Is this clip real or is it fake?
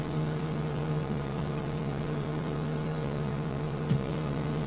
fake